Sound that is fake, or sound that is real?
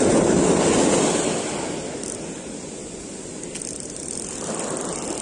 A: real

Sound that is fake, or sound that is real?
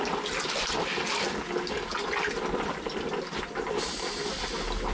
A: real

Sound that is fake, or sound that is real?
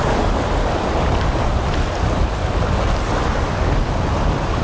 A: real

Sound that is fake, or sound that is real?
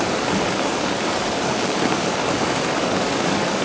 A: fake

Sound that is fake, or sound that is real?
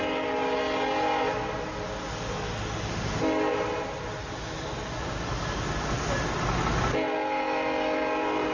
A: real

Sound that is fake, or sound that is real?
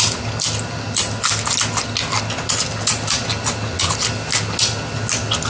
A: real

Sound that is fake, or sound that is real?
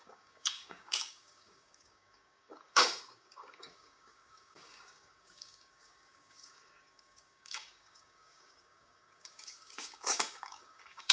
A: fake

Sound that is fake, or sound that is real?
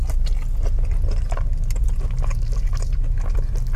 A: real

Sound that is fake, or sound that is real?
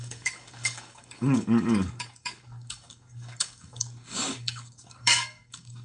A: fake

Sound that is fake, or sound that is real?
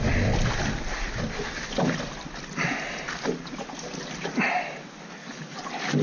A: real